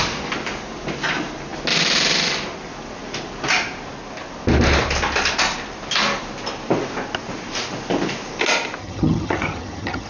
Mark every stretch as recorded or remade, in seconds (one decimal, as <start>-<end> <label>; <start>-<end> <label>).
0.0-8.8 recorded; 8.8-10.1 remade